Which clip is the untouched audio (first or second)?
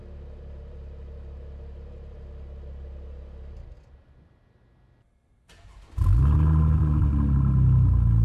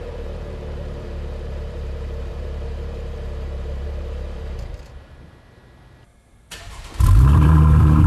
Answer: first